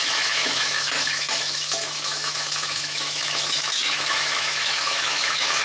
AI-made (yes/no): yes